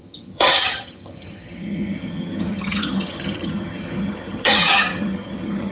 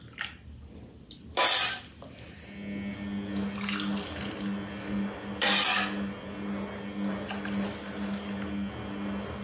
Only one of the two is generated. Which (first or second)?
first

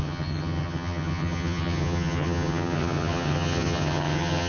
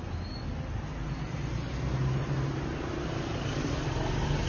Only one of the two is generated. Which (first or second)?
first